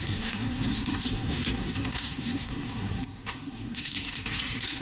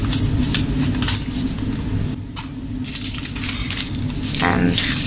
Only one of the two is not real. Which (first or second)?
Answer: first